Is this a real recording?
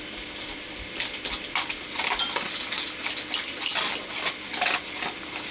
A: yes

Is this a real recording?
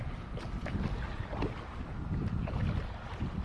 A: yes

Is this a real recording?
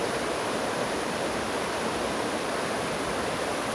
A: yes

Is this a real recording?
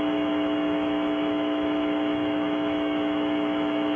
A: no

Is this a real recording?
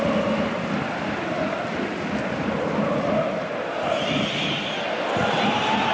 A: yes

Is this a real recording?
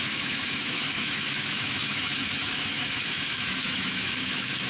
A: no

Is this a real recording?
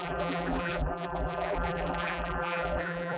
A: no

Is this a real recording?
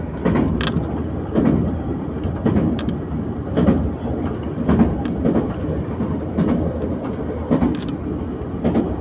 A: yes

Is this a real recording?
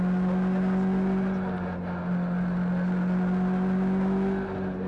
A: yes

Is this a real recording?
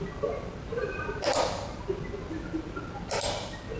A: yes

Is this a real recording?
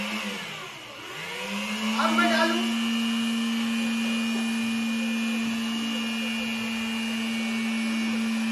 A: yes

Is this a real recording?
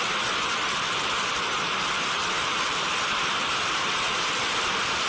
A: no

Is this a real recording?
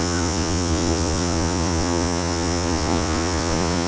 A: no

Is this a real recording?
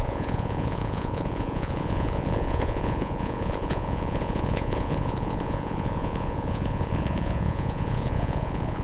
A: no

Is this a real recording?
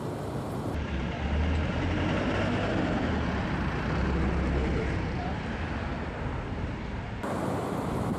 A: yes